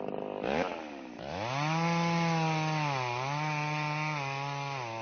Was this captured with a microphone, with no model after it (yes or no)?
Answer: yes